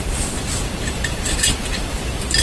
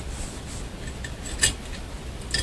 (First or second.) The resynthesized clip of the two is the first